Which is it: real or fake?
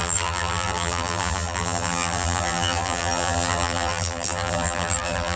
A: fake